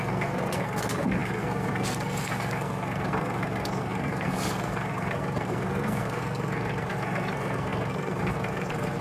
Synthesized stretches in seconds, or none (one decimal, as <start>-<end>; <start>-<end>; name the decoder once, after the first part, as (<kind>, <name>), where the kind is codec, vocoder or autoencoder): 0.0-9.0 (codec, SNAC)